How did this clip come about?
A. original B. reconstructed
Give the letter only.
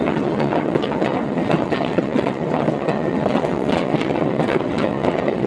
B